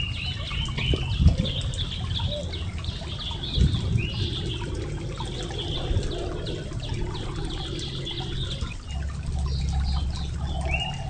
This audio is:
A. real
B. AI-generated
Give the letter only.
A